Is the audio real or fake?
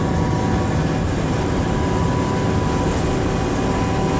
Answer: real